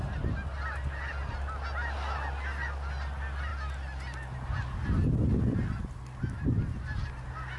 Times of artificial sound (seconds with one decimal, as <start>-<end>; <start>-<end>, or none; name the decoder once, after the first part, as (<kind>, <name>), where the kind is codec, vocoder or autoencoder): none